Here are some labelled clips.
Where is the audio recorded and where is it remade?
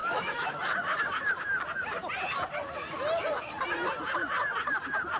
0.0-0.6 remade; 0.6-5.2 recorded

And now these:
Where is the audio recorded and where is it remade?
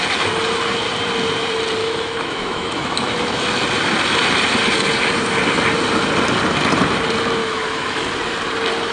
0.0-1.8 recorded; 1.8-3.4 remade; 3.4-7.4 recorded; 7.4-8.1 remade; 8.1-8.9 recorded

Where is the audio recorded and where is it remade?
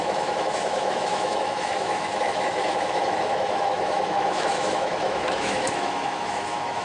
0.0-6.8 remade